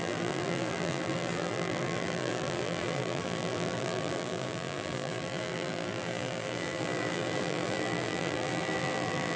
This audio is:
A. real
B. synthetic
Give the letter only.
B